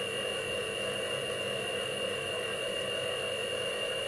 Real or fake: real